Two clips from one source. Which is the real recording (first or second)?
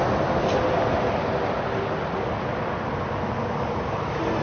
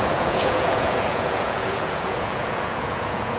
first